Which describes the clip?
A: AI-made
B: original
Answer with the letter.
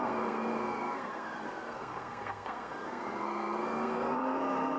A